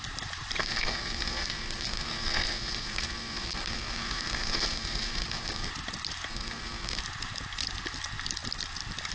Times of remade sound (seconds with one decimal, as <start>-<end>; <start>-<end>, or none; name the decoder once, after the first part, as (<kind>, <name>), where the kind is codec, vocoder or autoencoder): 0.6-5.7 (codec, SNAC); 6.3-7.0